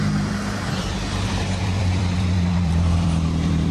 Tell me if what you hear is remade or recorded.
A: remade